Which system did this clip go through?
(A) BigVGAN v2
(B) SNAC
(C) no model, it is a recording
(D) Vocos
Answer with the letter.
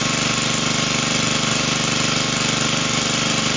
C